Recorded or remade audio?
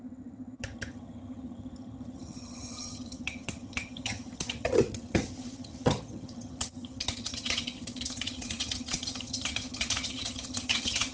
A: remade